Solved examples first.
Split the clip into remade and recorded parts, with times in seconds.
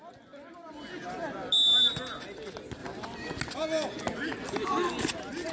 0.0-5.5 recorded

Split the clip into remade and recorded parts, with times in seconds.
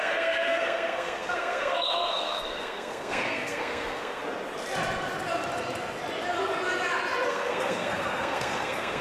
0.0-4.2 remade; 4.2-7.3 recorded; 7.3-9.0 remade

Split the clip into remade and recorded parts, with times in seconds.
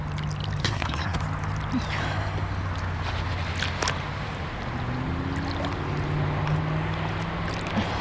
0.0-0.6 recorded; 0.6-1.2 remade; 1.2-8.0 recorded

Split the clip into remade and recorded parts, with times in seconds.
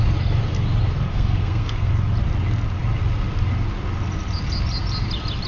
0.0-1.1 recorded; 1.1-1.9 remade; 1.9-5.5 recorded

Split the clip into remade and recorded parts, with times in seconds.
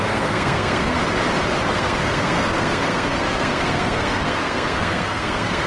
0.0-1.0 remade; 1.0-1.6 recorded; 1.6-5.7 remade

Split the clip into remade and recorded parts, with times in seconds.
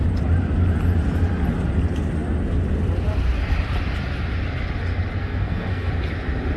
0.0-5.2 recorded; 5.2-5.9 remade; 5.9-6.6 recorded